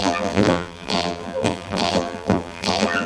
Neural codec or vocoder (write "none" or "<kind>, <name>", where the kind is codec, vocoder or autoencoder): vocoder, BigVGAN v2